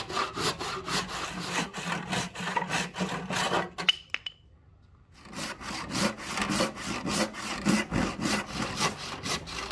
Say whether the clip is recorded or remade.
recorded